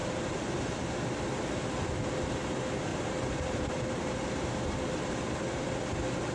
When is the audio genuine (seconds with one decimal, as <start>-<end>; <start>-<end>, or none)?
1.2-2.9; 4.9-6.3